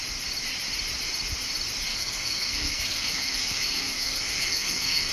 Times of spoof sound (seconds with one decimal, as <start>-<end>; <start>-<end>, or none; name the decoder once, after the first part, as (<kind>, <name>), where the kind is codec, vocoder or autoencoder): 1.9-5.1 (codec, SNAC)